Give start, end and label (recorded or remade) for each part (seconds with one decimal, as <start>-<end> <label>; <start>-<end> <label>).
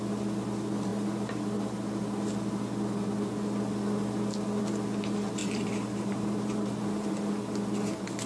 0.0-5.4 recorded; 5.4-7.3 remade; 7.3-8.3 recorded